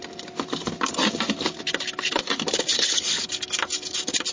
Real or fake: real